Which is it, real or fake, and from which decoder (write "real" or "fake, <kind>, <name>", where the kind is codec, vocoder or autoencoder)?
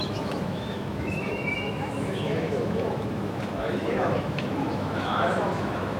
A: fake, autoencoder, DAC-VAE